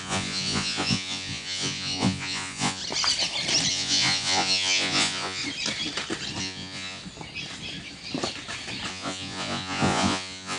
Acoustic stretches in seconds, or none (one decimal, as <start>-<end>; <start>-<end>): 2.8-3.7; 5.4-6.4; 7.0-8.9